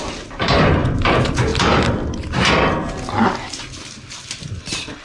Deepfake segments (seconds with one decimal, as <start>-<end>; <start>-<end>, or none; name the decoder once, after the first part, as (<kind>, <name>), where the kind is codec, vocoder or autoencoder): 0.0-1.5 (vocoder, BigVGAN v2); 4.4-5.0